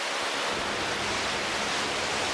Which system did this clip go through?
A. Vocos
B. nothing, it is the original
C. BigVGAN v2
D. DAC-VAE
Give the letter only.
B